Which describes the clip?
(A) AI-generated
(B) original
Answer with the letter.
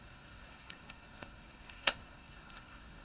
A